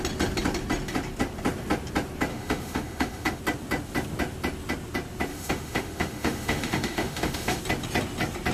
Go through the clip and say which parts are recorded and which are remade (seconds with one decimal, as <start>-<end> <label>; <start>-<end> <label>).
0.0-2.3 recorded; 2.3-3.4 remade; 3.4-5.3 recorded; 5.3-7.6 remade; 7.6-8.5 recorded